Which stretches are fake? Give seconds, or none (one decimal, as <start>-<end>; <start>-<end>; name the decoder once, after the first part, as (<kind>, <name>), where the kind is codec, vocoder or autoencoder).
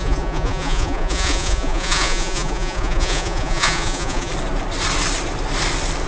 0.0-4.3 (vocoder, Vocos)